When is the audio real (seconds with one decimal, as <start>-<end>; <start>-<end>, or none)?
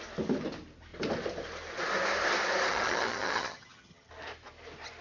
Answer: 0.0-2.7; 4.1-5.0